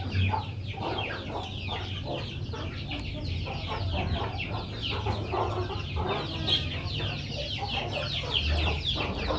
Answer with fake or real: real